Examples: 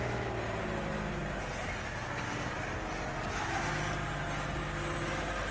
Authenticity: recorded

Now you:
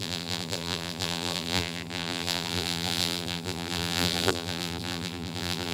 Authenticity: remade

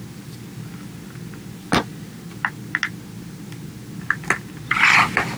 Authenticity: recorded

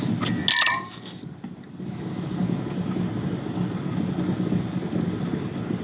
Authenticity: recorded